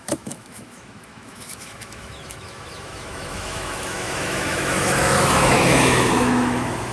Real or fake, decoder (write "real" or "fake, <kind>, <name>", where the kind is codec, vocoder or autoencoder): fake, autoencoder, DAC-VAE